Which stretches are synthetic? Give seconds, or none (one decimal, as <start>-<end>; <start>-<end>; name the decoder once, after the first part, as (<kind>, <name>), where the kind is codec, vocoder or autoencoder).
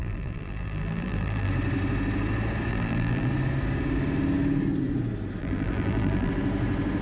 0.0-1.5 (vocoder, BigVGAN v2); 2.7-3.3; 5.4-6.3